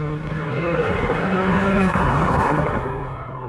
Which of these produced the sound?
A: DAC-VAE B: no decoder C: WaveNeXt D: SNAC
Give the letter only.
D